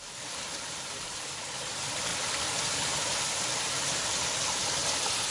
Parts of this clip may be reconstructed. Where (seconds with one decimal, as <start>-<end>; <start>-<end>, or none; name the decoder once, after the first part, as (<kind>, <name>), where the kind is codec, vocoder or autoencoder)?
0.0-2.1 (vocoder, BigVGAN v2); 4.6-5.3